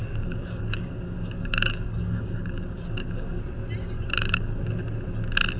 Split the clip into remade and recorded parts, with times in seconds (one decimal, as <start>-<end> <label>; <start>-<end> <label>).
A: 0.0-3.4 remade; 3.4-3.8 recorded; 3.8-4.6 remade; 4.6-5.6 recorded